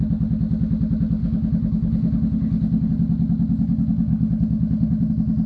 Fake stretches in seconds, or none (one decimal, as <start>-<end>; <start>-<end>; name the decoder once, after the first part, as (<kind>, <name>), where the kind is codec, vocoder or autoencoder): 1.2-2.9 (codec, HILCodec); 4.1-5.1